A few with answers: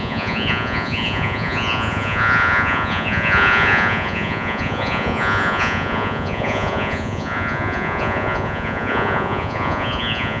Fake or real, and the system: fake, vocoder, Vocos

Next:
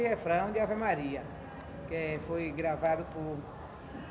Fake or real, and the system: real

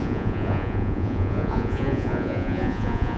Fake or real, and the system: fake, vocoder, Vocos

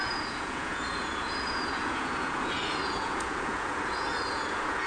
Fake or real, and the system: fake, vocoder, Vocos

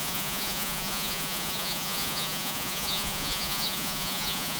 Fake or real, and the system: fake, vocoder, Vocos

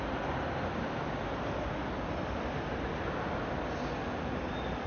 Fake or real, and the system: real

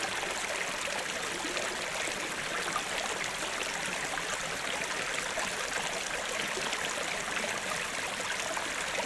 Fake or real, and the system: real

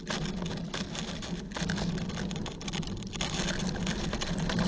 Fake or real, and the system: real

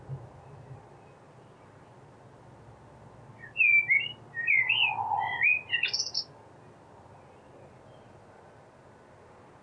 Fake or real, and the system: real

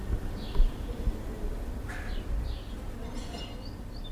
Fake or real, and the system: real